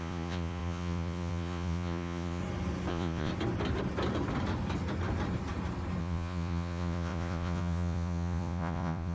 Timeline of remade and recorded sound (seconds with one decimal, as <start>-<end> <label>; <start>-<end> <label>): 0.0-2.4 remade; 2.4-2.9 recorded; 2.9-3.3 remade; 3.3-6.0 recorded; 6.0-9.1 remade